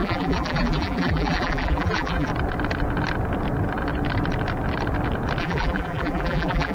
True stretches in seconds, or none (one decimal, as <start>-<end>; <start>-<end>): 2.3-5.4